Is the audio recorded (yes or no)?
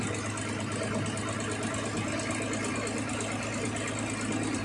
yes